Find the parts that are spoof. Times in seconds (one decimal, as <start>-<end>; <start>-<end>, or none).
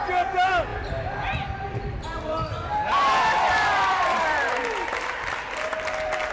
0.7-4.5